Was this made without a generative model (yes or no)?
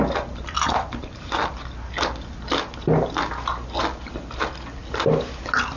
yes